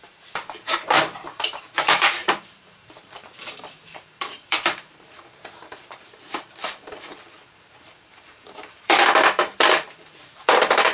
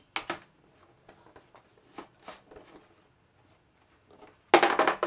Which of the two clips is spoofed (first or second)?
first